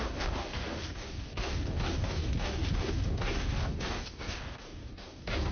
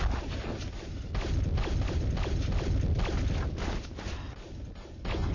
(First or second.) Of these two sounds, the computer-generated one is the first